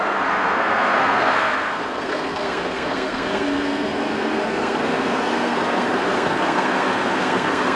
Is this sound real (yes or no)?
no